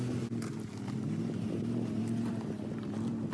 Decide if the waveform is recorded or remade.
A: recorded